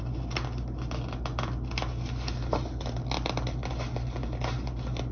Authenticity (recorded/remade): recorded